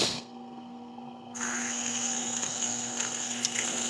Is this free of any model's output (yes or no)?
no